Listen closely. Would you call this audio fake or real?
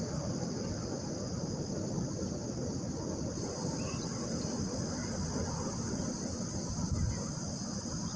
real